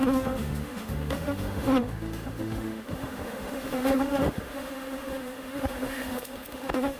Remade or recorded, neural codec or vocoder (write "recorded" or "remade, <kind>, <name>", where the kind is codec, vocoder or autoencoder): remade, autoencoder, DAC-VAE